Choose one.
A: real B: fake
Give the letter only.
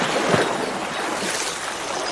B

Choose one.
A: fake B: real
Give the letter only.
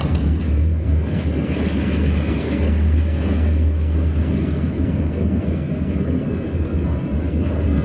A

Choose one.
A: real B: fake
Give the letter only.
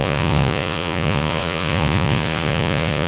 B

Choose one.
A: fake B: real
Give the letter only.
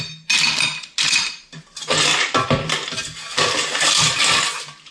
B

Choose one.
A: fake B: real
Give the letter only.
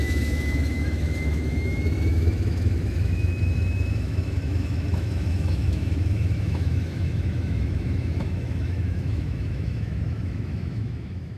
A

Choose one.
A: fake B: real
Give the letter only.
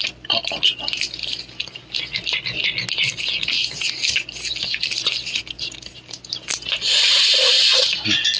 B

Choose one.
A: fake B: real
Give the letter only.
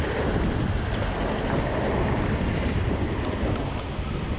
B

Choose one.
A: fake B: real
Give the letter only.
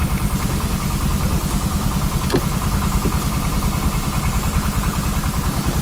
B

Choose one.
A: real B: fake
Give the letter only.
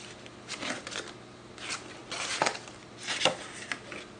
A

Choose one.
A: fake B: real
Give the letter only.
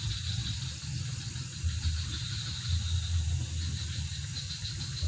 B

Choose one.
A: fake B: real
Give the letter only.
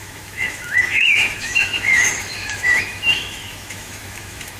A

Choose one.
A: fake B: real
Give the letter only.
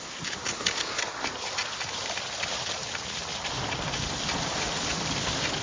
B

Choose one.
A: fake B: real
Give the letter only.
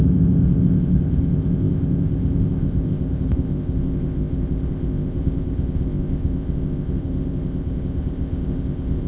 A